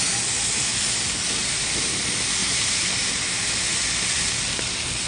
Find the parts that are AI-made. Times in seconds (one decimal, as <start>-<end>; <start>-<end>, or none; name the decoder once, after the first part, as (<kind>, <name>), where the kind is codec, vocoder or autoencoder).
1.4-2.0 (vocoder, BigVGAN v2); 2.4-3.1